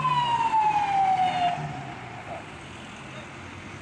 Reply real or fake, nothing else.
real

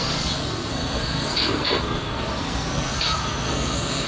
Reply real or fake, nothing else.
fake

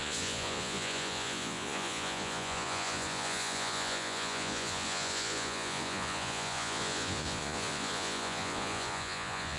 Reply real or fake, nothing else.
fake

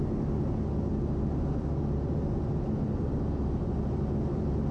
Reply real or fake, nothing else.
real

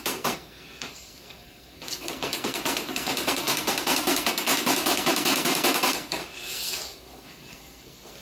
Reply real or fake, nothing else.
fake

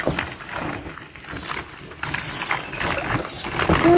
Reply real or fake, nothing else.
real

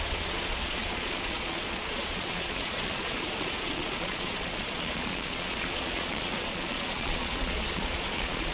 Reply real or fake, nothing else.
fake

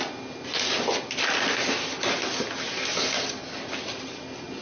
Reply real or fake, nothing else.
real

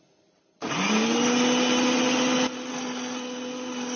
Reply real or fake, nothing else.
real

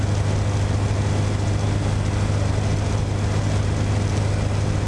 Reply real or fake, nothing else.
real